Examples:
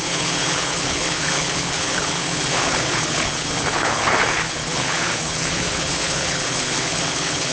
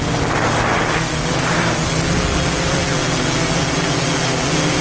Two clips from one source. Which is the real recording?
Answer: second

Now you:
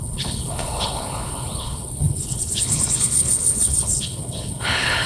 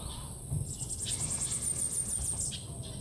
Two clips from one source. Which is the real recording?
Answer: second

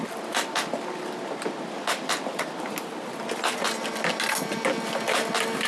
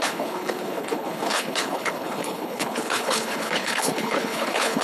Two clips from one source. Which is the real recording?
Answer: first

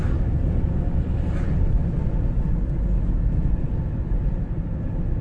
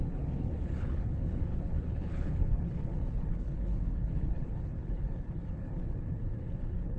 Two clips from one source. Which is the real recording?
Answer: first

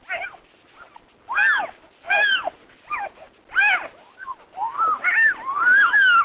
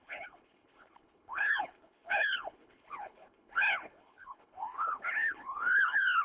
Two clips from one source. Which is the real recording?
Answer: first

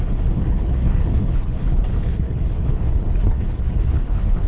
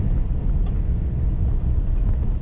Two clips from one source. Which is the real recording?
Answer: second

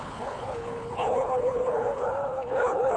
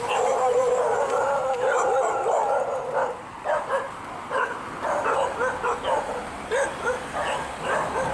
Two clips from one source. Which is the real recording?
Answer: second